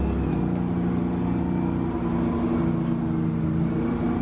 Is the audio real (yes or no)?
yes